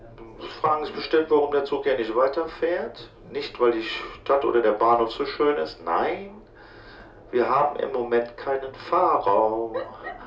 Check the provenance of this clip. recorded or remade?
recorded